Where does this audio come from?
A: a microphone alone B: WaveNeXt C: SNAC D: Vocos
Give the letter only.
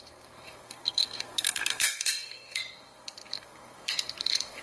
C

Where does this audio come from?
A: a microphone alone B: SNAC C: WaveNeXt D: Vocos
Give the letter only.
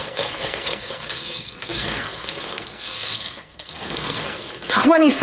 B